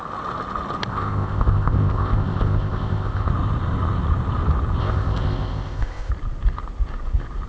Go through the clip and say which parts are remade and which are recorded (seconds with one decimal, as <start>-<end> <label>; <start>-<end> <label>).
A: 0.0-0.9 recorded; 0.9-3.3 remade; 3.3-4.8 recorded; 4.8-6.1 remade; 6.1-7.5 recorded